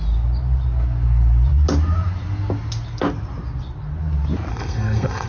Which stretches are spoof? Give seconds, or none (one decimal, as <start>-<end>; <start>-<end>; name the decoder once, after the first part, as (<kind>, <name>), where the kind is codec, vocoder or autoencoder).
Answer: 4.5-5.3 (codec, SNAC)